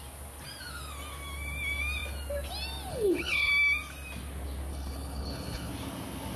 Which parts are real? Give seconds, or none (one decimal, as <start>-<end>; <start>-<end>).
0.0-2.9; 3.5-4.7; 5.7-6.4